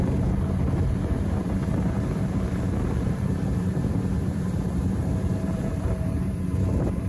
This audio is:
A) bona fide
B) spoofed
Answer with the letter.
B